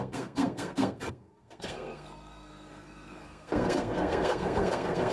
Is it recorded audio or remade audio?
remade